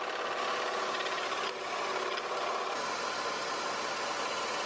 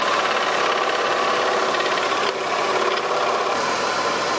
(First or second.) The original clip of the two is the first